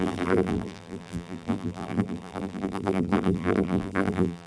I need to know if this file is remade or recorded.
remade